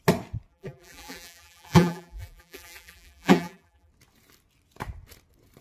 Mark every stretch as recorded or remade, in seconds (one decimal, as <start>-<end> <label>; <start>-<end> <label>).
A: 0.0-0.5 recorded; 0.5-3.9 remade; 3.9-5.6 recorded